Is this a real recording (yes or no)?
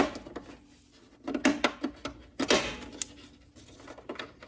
yes